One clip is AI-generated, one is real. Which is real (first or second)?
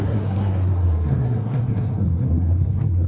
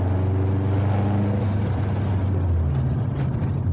second